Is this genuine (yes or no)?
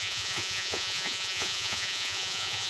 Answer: no